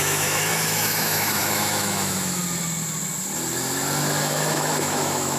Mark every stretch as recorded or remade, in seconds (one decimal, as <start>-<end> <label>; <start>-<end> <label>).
0.0-2.4 remade; 2.4-4.2 recorded; 4.2-5.4 remade